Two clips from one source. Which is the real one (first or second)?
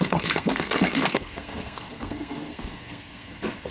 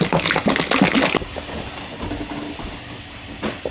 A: second